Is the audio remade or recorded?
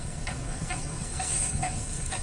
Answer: remade